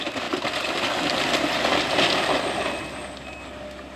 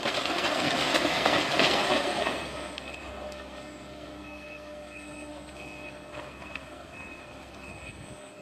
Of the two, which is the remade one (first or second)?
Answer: second